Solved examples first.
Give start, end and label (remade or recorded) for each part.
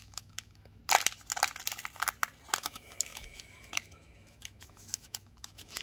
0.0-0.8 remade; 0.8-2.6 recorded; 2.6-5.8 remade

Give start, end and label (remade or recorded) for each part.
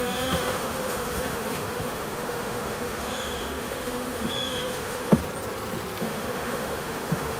0.0-5.2 remade; 5.2-6.0 recorded; 6.0-7.4 remade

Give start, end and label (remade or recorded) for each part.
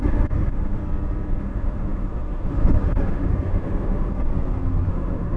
0.0-0.8 remade; 0.8-1.4 recorded; 1.4-4.3 remade; 4.3-4.9 recorded; 4.9-5.4 remade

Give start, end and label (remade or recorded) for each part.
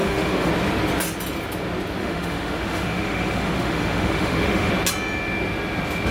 0.0-0.5 remade; 0.5-2.0 recorded; 2.0-4.7 remade; 4.7-6.1 recorded